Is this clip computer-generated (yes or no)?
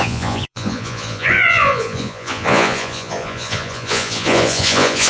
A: yes